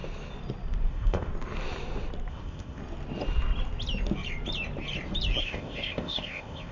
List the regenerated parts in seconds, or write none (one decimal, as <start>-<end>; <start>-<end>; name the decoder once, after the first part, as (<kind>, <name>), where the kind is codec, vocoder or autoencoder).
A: 0.9-1.3 (codec, ZipCodec); 2.3-2.8; 5.4-6.7